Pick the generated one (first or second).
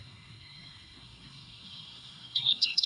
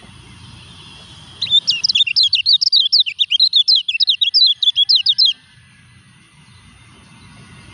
first